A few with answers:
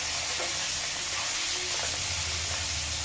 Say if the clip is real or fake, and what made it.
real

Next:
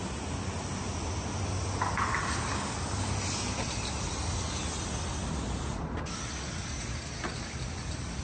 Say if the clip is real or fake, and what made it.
real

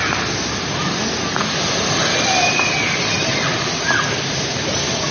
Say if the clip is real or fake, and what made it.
real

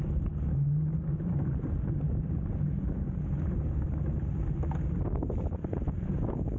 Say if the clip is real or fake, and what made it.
real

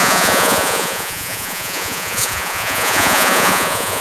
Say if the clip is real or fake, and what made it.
fake, vocoder, Vocos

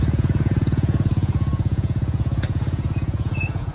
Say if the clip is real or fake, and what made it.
fake, vocoder, Vocos